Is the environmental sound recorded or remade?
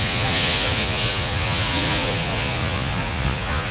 remade